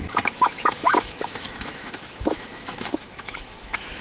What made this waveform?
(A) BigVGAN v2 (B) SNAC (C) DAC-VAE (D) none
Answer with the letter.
C